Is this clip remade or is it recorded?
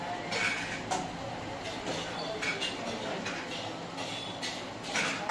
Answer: recorded